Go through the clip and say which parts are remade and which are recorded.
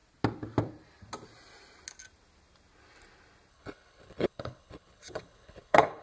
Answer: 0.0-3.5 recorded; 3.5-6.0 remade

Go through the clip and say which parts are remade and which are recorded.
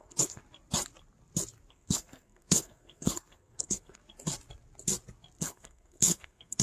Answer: 0.0-0.4 remade; 0.4-1.7 recorded; 1.7-4.0 remade; 4.0-5.4 recorded; 5.4-6.6 remade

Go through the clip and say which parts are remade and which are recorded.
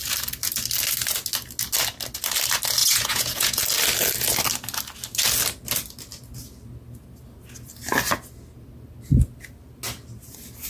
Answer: 0.0-2.8 recorded; 2.8-3.6 remade; 3.6-10.7 recorded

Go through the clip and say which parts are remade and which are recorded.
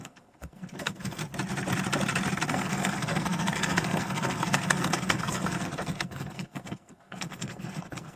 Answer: 0.0-1.2 remade; 1.2-2.5 recorded; 2.5-8.2 remade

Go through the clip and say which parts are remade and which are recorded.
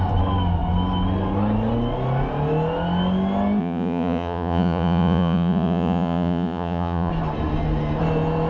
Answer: 0.0-3.6 recorded; 3.6-7.1 remade; 7.1-8.5 recorded